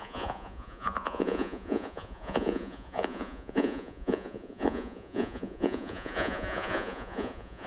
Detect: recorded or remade remade